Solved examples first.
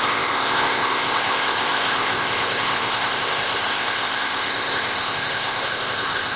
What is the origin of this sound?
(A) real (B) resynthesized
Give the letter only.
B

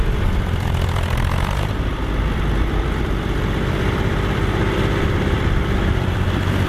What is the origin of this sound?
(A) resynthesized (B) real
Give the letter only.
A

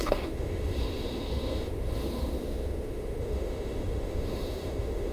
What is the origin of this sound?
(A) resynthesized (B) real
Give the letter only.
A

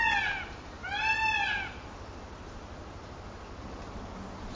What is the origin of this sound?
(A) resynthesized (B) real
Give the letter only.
B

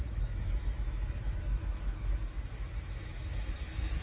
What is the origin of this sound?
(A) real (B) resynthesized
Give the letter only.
B